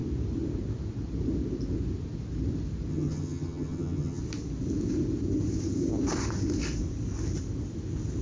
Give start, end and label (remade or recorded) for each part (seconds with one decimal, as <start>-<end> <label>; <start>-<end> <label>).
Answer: 0.0-2.9 recorded; 2.9-4.2 remade; 4.2-8.2 recorded